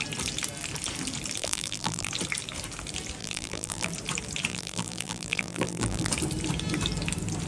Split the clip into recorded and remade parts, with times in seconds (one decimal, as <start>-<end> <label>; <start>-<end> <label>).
0.0-1.4 recorded; 1.4-2.1 remade; 2.1-3.2 recorded; 3.2-3.9 remade; 3.9-4.5 recorded; 4.5-6.1 remade; 6.1-7.5 recorded